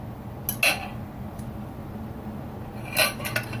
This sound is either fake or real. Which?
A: real